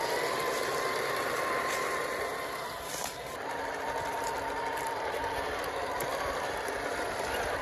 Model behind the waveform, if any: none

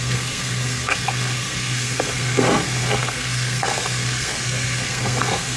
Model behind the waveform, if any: codec, SNAC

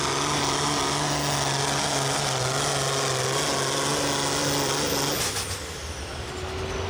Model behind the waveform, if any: none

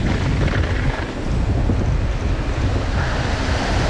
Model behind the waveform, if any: none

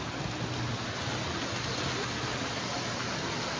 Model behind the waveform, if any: none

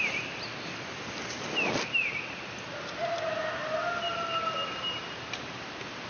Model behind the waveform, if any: none